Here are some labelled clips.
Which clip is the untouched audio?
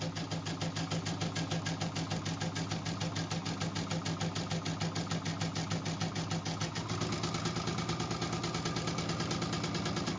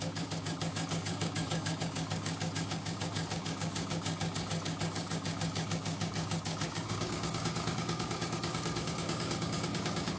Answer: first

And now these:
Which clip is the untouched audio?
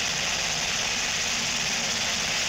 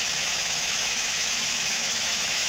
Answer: first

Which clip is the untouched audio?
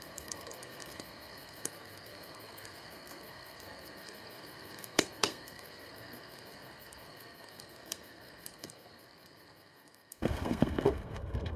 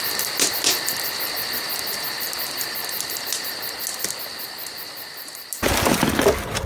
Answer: second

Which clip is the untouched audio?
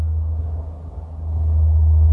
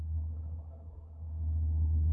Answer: first